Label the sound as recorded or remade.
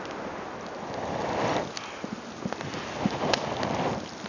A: recorded